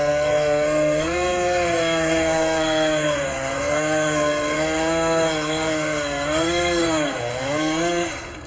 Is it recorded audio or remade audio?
remade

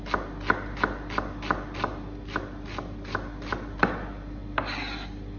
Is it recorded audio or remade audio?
recorded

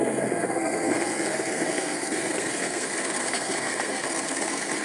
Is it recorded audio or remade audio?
remade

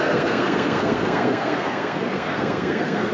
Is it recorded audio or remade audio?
remade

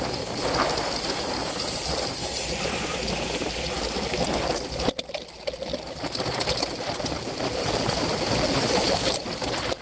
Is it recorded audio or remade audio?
recorded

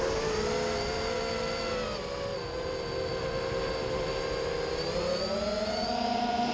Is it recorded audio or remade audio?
recorded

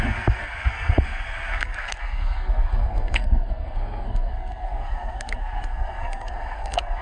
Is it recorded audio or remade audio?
remade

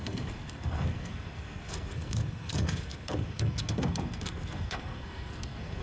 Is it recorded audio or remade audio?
remade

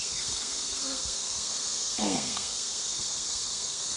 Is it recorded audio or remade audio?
remade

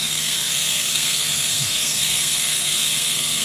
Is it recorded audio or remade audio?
remade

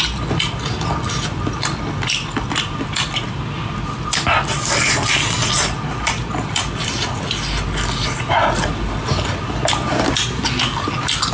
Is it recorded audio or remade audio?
recorded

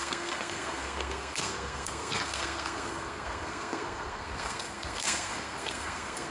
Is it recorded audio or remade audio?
remade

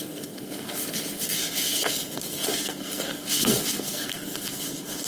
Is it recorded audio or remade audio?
remade